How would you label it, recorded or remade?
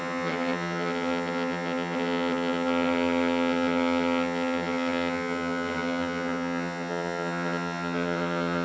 remade